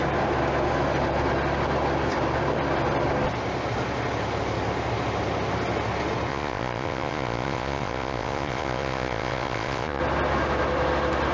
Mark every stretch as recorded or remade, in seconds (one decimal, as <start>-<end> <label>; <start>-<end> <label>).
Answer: 0.0-6.3 recorded; 6.3-10.0 remade; 10.0-11.3 recorded